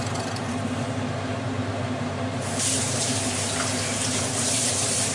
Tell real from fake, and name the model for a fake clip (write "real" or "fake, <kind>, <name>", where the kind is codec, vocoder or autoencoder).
fake, vocoder, BigVGAN v2